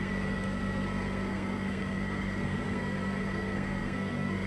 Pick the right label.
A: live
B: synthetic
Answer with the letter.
B